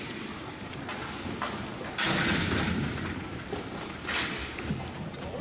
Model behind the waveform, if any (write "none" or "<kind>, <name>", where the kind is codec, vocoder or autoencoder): none